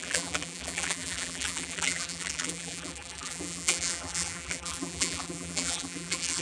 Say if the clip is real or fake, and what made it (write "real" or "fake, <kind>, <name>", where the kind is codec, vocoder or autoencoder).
fake, vocoder, BigVGAN v2